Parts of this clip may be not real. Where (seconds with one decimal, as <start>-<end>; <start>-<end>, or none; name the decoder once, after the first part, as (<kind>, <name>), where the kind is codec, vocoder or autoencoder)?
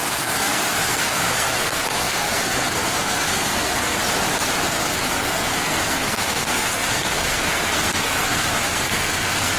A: 0.0-4.0 (codec, SNAC); 4.7-9.6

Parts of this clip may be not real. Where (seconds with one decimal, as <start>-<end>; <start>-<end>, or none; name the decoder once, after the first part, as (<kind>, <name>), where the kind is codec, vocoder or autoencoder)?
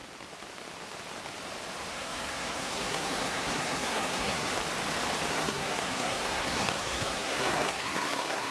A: 1.9-4.5 (codec, SNAC); 5.3-8.5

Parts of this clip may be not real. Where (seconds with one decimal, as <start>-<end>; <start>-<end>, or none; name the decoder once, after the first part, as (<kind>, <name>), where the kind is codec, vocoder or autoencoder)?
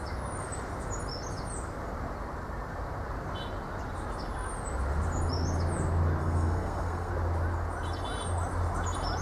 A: 6.2-7.1 (codec, SNAC)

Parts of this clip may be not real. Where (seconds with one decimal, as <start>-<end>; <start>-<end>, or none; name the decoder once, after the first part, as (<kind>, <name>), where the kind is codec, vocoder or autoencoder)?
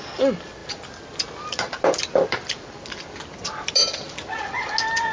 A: none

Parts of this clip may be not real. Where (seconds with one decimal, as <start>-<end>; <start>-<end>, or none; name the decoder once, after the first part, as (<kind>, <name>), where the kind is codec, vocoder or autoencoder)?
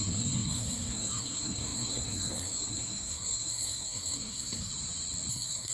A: 0.0-4.7 (codec, SNAC); 5.3-5.7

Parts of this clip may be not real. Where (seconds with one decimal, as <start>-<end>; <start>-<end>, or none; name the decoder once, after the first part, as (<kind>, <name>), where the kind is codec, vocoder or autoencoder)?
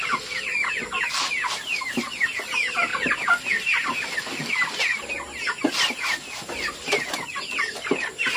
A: none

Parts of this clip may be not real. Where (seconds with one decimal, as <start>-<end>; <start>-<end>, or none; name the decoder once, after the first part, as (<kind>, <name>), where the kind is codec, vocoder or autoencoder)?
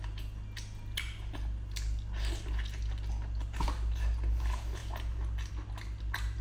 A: none